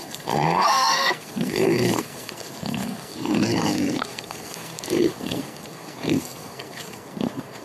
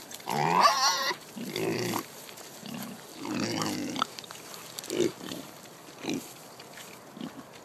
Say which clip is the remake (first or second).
first